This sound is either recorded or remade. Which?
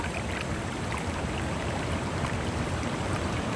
remade